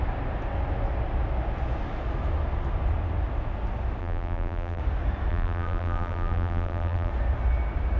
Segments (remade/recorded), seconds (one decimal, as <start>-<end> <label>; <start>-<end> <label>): 0.0-4.0 recorded; 4.0-4.8 remade; 4.8-5.3 recorded; 5.3-7.1 remade; 7.1-8.0 recorded